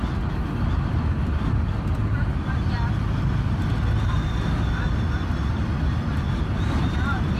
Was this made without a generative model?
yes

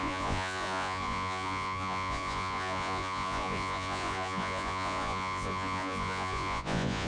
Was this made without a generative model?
no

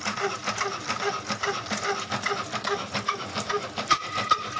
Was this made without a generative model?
yes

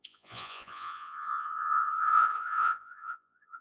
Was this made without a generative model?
no